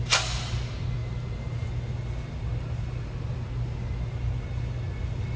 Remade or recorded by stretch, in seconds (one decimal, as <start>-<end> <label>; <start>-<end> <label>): 0.0-5.4 recorded